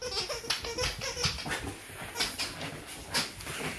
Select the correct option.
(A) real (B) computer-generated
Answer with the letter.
A